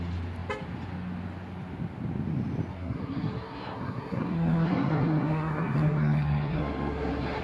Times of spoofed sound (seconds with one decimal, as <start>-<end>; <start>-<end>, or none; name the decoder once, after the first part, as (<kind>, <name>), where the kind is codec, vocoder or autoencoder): 2.7-7.4 (codec, SNAC)